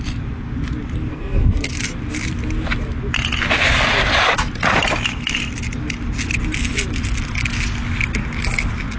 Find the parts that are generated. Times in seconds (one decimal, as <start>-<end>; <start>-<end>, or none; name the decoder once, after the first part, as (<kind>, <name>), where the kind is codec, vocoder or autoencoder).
1.1-1.7 (codec, SNAC)